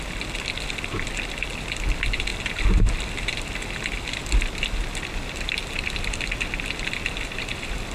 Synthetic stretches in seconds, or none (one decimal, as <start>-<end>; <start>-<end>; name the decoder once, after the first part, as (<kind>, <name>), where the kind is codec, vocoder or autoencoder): none